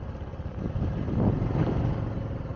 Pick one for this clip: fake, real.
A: real